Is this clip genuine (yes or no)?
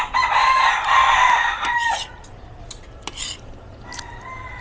yes